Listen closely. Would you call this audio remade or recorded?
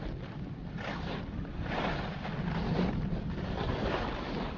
recorded